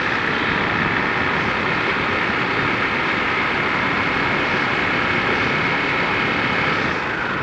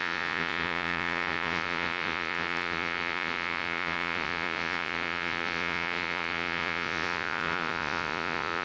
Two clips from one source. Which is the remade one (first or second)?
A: second